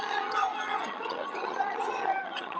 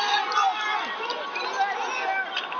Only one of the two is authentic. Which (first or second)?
second